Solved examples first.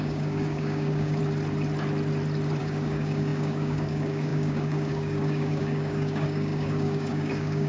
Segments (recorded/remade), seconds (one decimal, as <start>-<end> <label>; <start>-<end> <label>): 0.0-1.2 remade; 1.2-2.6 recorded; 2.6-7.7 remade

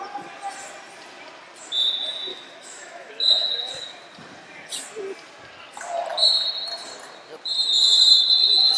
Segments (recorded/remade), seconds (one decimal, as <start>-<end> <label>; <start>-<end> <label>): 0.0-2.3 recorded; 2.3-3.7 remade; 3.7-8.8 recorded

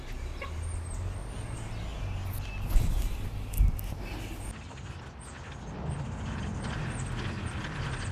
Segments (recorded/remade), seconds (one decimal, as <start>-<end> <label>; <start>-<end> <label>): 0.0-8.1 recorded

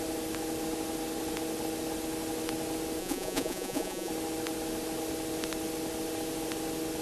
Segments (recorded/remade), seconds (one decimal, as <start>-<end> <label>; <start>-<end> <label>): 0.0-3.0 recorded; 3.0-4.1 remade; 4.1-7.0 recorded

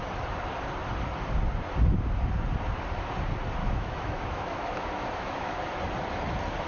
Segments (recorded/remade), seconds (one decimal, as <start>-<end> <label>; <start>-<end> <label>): 0.0-3.6 recorded; 3.6-5.8 remade; 5.8-6.7 recorded

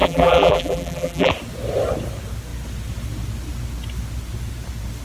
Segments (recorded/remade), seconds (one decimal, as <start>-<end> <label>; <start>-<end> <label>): 0.0-1.3 remade; 1.3-5.0 recorded